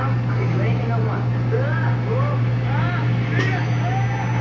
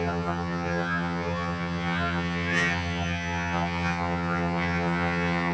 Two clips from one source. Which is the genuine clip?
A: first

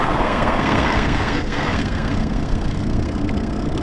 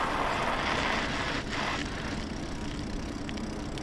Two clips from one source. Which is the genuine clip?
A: second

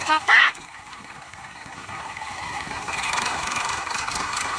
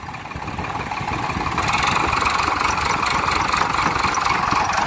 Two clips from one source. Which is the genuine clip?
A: second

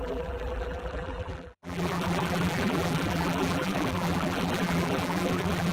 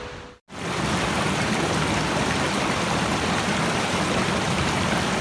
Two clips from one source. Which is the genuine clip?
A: second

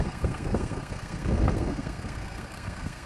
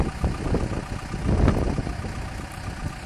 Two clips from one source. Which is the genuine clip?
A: second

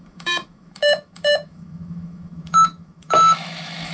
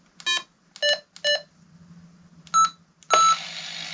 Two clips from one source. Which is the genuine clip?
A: second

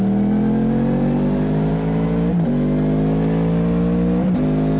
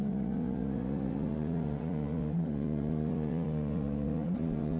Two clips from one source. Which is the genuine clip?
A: first